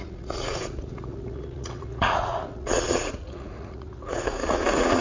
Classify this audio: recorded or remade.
remade